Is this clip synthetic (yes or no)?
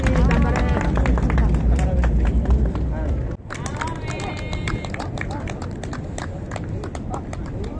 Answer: no